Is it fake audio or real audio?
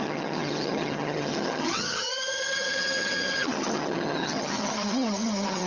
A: fake